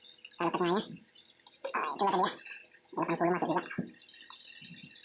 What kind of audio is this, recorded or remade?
recorded